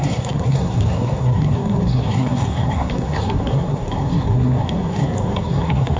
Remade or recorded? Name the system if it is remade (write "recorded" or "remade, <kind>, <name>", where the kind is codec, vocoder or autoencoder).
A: remade, codec, SNAC